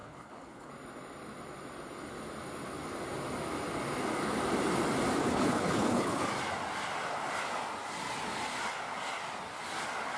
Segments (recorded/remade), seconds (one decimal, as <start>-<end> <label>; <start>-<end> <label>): 0.0-0.7 remade; 0.7-5.2 recorded; 5.2-6.2 remade; 6.2-10.2 recorded